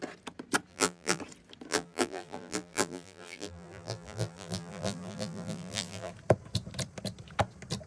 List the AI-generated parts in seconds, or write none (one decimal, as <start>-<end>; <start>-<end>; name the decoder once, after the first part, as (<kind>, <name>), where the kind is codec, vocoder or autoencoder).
0.7-1.2 (vocoder, BigVGAN v2); 1.7-6.1